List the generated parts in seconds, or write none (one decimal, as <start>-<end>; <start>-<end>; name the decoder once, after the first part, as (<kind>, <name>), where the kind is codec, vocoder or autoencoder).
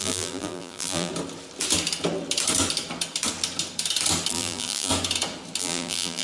0.0-1.1 (vocoder, BigVGAN v2); 4.3-4.9; 5.6-6.2